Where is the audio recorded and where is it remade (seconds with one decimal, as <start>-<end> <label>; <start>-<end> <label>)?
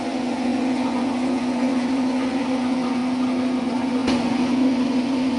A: 0.0-3.0 remade; 3.0-3.6 recorded; 3.6-5.4 remade